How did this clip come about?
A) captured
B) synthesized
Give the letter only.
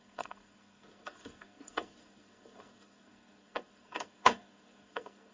B